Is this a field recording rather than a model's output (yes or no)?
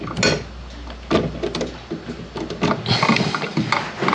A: yes